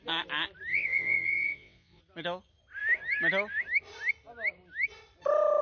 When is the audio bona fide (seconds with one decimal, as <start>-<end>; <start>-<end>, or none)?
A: 0.0-0.7; 2.0-5.6